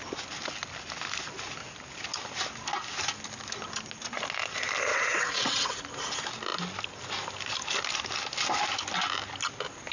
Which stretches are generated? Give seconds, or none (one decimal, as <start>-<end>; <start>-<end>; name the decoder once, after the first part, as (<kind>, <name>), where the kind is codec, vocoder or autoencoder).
4.9-5.8 (vocoder, WaveNeXt)